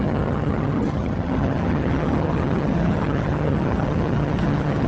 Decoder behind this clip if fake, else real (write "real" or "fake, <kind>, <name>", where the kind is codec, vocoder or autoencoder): fake, vocoder, HiFi-GAN